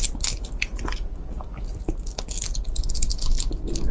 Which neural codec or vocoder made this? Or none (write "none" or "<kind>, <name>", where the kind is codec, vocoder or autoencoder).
none